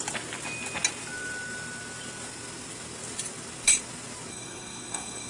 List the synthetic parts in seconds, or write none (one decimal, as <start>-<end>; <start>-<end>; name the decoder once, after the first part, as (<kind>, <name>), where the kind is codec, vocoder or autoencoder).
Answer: 4.3-5.3 (codec, SNAC)